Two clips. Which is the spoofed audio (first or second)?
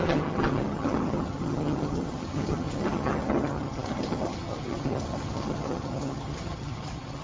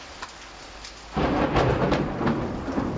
first